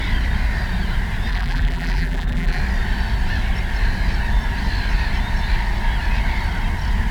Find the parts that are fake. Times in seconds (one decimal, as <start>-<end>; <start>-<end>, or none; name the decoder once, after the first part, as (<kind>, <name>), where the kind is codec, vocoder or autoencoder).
1.3-2.6 (vocoder, BigVGAN v2)